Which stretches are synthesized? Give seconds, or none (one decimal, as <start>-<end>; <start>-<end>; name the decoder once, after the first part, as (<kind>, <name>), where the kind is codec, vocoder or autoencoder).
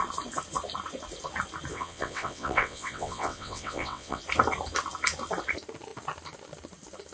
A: 1.7-4.2 (vocoder, WaveNeXt)